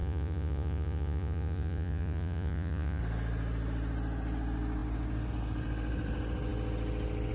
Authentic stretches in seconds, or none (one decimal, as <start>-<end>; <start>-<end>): 3.0-7.3